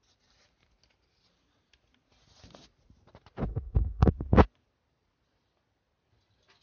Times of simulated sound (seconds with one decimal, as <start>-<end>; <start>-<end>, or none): 3.5-4.1